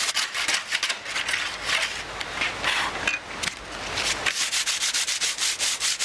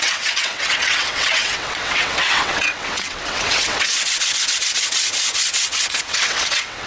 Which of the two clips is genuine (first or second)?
first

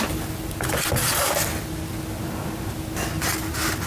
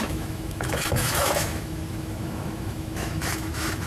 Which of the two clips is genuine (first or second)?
first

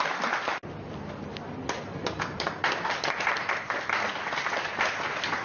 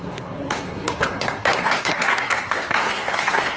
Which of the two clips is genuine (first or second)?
first